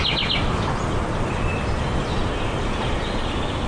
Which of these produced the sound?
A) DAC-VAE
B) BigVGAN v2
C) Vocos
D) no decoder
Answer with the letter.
D